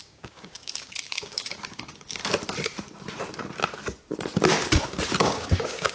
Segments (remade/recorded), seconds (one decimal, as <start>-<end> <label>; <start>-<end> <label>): 0.0-2.2 remade; 2.2-5.2 recorded; 5.2-5.9 remade